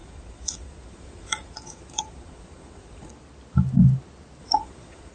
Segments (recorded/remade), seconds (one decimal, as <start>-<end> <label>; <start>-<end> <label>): 0.0-3.1 remade; 3.1-4.4 recorded; 4.4-5.1 remade